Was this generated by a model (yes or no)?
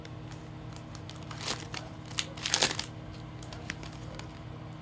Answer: no